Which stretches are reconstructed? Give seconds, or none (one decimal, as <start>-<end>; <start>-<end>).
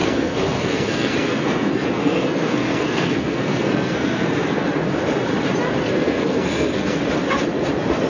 0.0-4.9; 5.8-7.0